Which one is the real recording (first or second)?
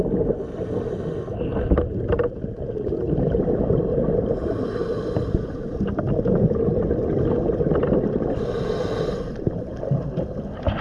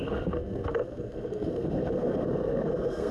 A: first